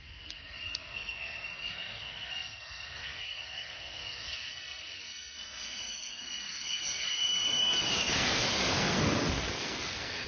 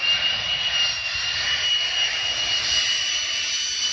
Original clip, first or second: second